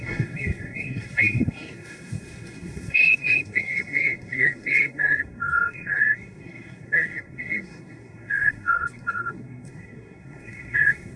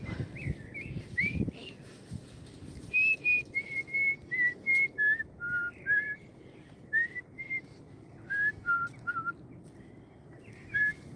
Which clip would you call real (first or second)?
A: second